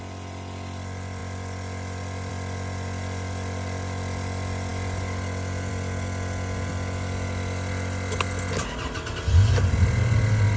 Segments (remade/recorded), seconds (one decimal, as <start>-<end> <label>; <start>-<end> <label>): 0.0-10.6 recorded

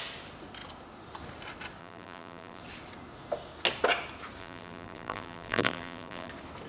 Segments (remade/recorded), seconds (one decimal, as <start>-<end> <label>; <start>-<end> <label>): 0.0-1.8 recorded; 1.8-2.6 remade; 2.6-4.4 recorded; 4.4-6.3 remade; 6.3-6.7 recorded

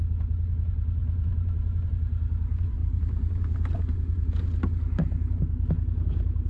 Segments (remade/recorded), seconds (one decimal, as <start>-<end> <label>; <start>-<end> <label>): 0.0-1.0 recorded; 1.0-1.9 remade; 1.9-2.8 recorded; 2.8-4.3 remade; 4.3-6.5 recorded

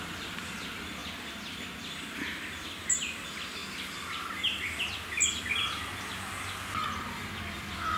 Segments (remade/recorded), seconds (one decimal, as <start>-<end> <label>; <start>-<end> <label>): 0.0-1.0 remade; 1.0-1.8 recorded; 1.8-3.6 remade; 3.6-5.5 recorded; 5.5-8.0 remade

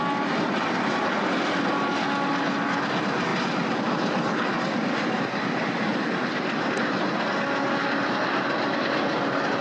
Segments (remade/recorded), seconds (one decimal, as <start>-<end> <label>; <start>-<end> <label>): 0.0-9.6 recorded

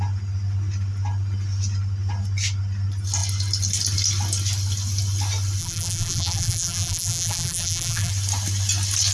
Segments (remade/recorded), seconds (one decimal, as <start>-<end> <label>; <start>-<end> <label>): 0.0-5.6 recorded; 5.6-8.1 remade; 8.1-9.1 recorded